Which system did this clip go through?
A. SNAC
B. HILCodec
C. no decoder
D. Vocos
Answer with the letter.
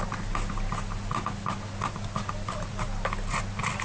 C